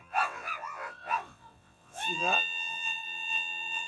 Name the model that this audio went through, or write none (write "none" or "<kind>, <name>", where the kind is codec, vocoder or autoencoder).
vocoder, WaveNeXt